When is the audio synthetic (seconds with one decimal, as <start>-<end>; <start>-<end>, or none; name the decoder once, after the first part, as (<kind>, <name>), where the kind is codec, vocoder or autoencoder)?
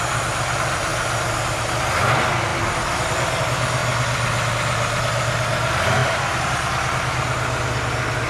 0.9-1.6 (vocoder, BigVGAN v2); 6.0-6.5